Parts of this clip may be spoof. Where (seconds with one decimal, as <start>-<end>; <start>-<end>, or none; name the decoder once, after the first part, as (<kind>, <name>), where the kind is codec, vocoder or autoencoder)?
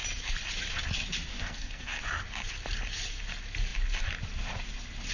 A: 1.3-2.0 (codec, SNAC)